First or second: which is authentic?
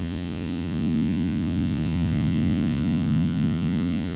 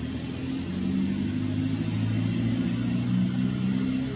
second